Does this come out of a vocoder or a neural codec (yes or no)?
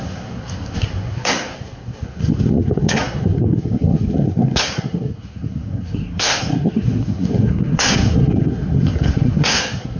yes